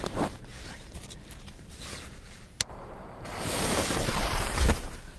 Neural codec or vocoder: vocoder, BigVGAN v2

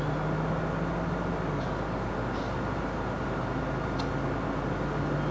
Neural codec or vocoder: none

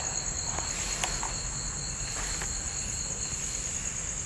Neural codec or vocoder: none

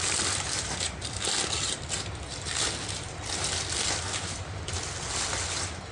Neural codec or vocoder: none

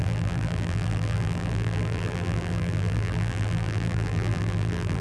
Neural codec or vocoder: vocoder, BigVGAN v2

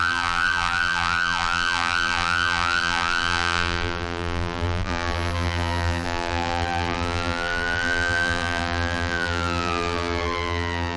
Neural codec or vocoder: vocoder, BigVGAN v2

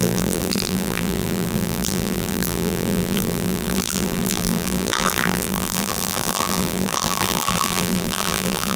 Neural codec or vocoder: vocoder, BigVGAN v2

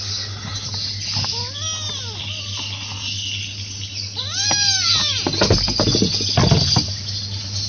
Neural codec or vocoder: none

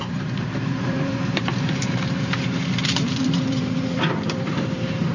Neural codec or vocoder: vocoder, BigVGAN v2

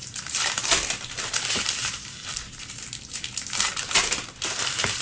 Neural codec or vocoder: vocoder, BigVGAN v2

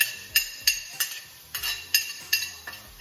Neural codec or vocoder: none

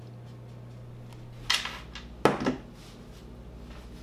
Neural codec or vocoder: none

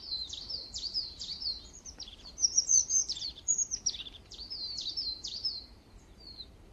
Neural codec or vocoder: vocoder, BigVGAN v2